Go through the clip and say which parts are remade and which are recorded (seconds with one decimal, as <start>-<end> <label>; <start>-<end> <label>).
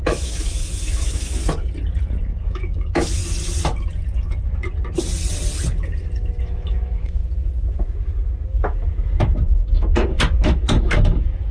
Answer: 0.0-1.4 remade; 1.4-2.4 recorded; 2.4-3.2 remade; 3.2-6.4 recorded; 6.4-7.2 remade; 7.2-9.5 recorded; 9.5-11.5 remade